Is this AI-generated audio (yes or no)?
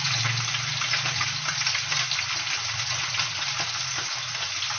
no